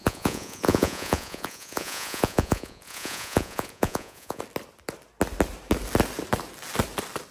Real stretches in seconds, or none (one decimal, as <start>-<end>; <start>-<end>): 4.4-7.3